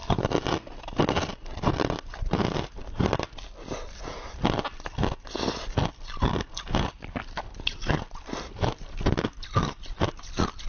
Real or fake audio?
real